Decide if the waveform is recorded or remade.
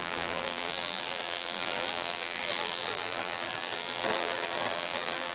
remade